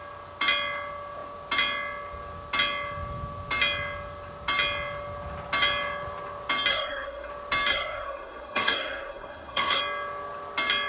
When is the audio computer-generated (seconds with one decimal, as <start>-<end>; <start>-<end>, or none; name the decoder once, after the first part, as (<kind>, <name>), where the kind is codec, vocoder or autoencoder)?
6.7-7.3 (codec, SNAC); 7.7-9.8